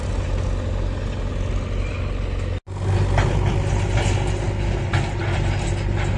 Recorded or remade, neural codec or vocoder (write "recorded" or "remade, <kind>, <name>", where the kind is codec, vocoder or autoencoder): recorded